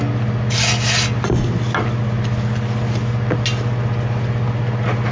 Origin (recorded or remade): recorded